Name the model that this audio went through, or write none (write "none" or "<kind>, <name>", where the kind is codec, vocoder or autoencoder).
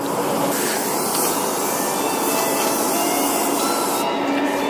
none